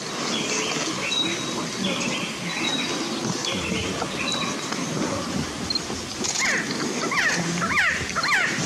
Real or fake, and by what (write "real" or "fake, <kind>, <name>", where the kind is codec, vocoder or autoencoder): real